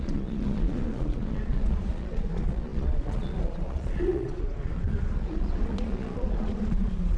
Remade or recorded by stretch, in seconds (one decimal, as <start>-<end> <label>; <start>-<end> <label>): 0.0-7.2 remade